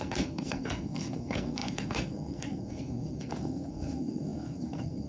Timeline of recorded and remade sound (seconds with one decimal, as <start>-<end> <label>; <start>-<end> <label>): 0.0-5.1 remade